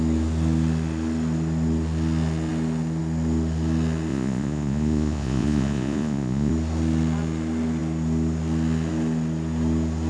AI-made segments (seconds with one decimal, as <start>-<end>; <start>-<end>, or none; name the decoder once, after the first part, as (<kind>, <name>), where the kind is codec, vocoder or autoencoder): 4.1-6.5 (vocoder, Vocos)